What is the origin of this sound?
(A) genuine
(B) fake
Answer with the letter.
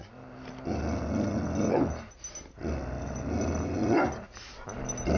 A